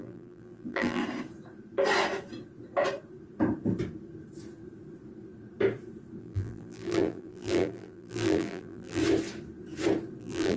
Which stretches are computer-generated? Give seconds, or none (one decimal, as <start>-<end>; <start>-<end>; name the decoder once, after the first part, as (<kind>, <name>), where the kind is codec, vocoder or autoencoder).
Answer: 0.0-1.0 (vocoder, BigVGAN v2); 6.2-9.0; 10.2-10.6